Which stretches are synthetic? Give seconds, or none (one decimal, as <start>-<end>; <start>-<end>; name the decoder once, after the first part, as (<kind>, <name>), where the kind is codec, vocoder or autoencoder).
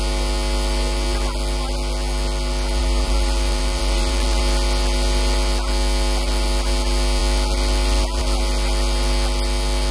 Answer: 2.8-4.4 (vocoder, BigVGAN v2)